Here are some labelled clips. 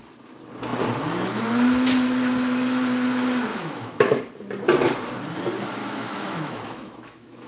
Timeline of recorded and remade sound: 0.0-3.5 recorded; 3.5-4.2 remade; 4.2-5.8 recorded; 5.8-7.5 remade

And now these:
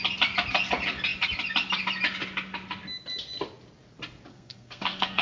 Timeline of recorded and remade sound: 0.0-4.3 recorded; 4.3-5.2 remade